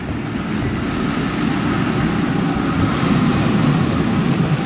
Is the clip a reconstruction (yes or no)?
no